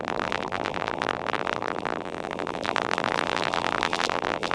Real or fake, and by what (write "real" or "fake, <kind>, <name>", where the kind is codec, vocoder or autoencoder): fake, vocoder, BigVGAN v2